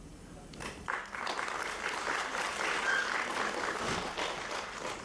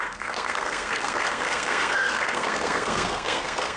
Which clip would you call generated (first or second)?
second